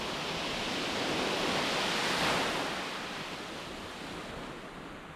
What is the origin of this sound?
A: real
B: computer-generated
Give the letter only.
A